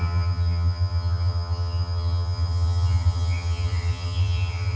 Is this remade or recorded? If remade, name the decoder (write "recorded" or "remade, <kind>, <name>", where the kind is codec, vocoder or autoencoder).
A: remade, vocoder, HiFi-GAN